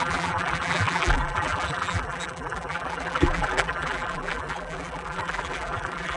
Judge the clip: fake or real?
fake